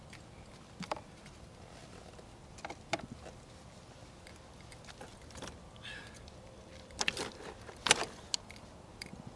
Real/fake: real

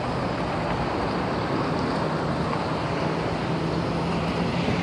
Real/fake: real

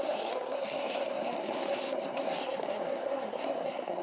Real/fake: fake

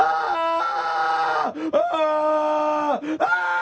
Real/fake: real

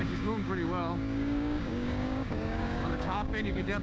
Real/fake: fake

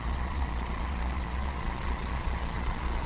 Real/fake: fake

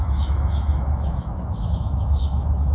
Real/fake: fake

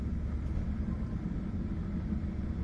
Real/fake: real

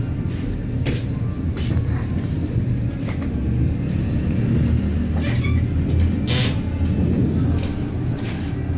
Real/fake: real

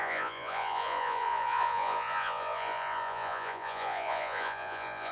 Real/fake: fake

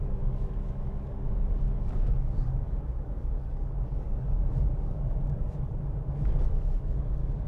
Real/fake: fake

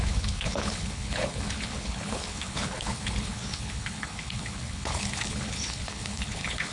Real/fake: fake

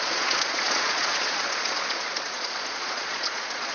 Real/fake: fake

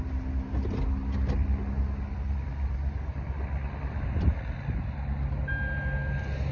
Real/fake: real